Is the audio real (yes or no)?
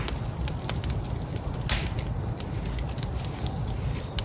yes